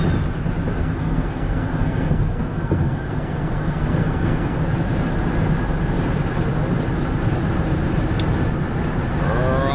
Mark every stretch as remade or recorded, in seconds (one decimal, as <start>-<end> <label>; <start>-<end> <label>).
0.0-0.8 recorded; 0.8-4.6 remade; 4.6-9.7 recorded